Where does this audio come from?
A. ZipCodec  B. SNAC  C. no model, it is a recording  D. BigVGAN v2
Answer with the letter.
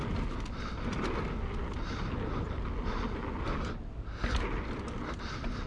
C